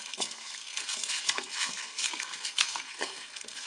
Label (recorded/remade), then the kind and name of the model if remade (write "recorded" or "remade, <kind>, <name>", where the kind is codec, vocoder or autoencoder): remade, codec, SNAC